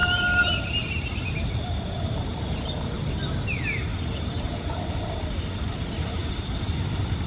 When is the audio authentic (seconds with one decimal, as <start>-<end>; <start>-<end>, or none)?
0.0-7.3